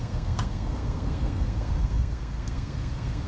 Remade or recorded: remade